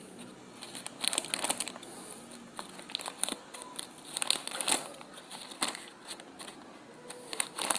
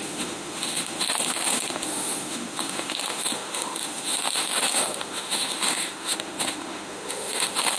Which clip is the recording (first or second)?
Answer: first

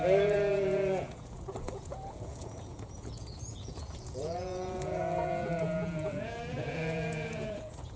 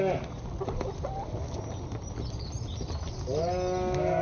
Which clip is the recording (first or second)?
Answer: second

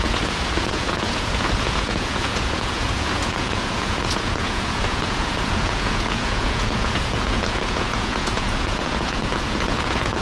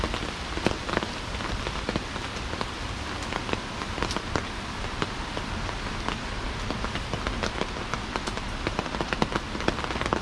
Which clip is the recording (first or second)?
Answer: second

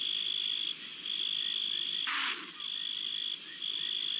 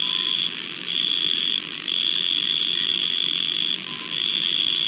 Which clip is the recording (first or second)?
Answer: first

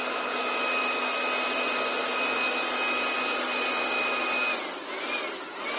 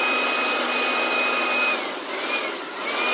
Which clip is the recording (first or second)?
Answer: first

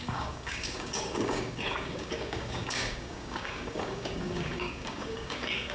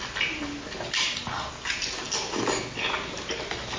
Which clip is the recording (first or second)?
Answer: second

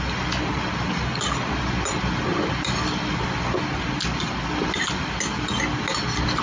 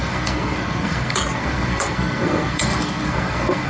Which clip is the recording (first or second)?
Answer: first